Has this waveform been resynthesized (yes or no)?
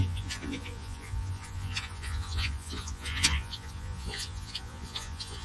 yes